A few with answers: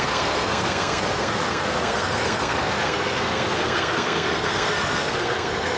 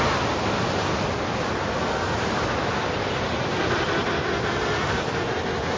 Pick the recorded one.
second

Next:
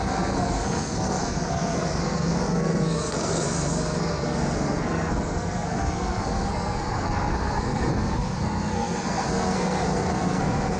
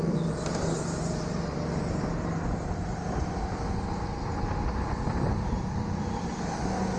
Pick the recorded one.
second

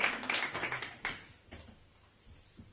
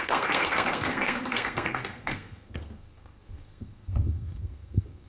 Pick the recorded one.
first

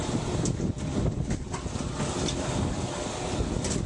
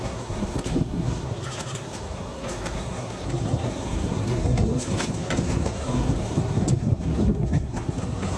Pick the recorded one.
first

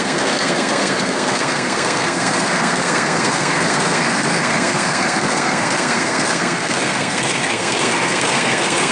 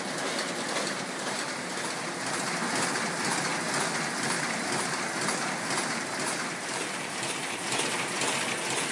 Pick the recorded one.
second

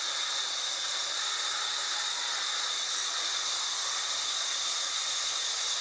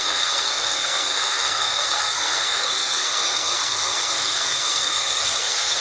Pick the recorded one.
first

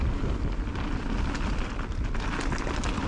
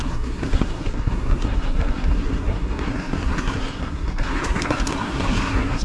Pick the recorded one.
first